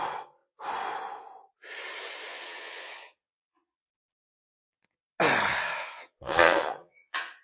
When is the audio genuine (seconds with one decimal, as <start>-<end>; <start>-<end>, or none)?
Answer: 0.0-2.3; 5.0-5.8